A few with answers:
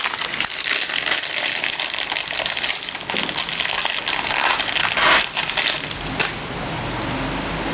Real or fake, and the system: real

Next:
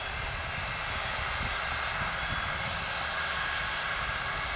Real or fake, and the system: real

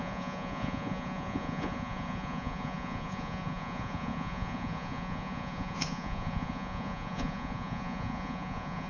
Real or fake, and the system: fake, vocoder, Vocos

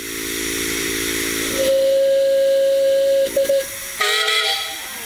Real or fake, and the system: real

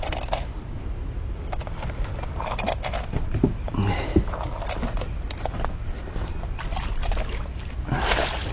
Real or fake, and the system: real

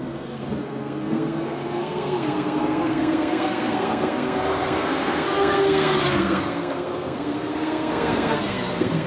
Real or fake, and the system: fake, codec, SNAC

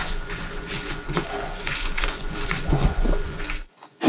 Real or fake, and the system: fake, vocoder, Vocos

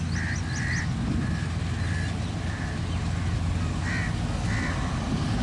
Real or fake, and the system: real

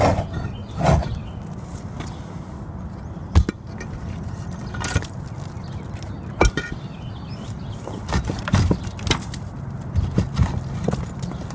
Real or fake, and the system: real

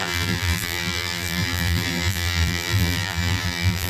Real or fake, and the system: fake, vocoder, BigVGAN v2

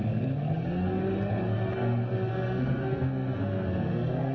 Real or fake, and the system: fake, codec, SNAC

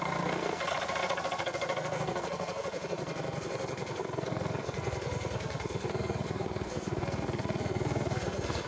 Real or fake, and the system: fake, codec, SNAC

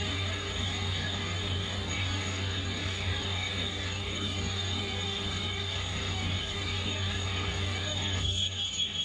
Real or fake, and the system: fake, codec, DAC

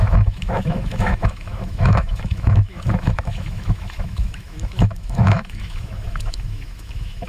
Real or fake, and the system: fake, autoencoder, DAC-VAE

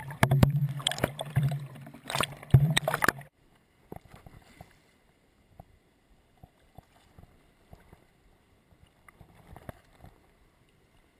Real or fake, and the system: fake, vocoder, BigVGAN v2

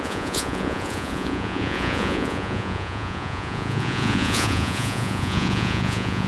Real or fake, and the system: fake, vocoder, Vocos